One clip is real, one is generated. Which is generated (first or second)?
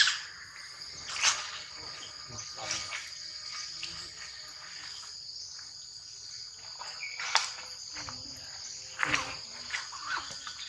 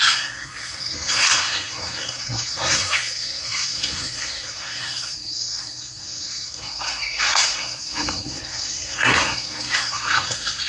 second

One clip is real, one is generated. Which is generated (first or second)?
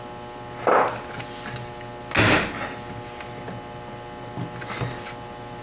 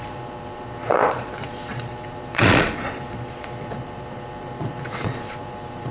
second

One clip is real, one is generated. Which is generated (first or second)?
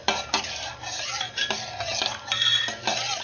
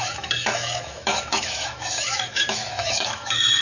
second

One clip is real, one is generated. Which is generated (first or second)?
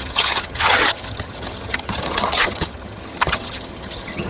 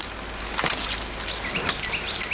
first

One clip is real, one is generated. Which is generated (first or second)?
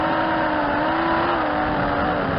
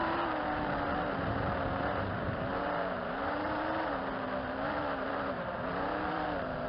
second